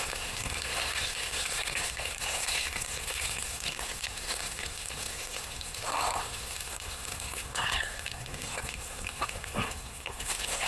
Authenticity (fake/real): fake